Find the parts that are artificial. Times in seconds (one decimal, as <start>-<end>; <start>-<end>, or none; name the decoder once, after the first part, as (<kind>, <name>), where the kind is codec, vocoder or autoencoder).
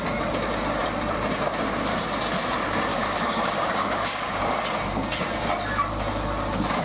2.9-4.4 (codec, DAC)